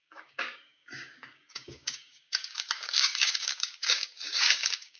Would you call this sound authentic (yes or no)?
no